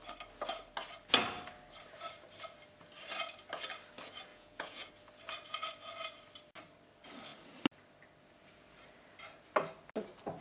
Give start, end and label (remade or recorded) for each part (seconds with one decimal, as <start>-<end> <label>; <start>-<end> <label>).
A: 0.0-4.3 recorded; 4.3-4.9 remade; 4.9-10.4 recorded